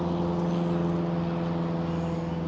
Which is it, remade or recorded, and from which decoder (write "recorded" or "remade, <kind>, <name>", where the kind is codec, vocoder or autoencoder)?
recorded